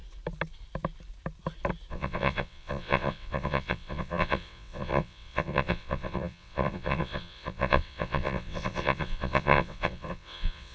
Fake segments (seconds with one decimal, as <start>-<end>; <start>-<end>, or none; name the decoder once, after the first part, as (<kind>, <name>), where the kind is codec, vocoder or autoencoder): 1.9-10.7 (vocoder, WaveNeXt)